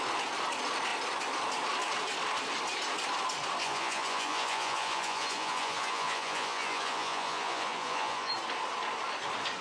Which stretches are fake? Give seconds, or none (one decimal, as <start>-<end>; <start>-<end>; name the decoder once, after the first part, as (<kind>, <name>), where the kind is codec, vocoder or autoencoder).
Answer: 3.6-8.3 (vocoder, Vocos)